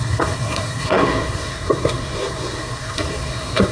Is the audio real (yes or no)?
no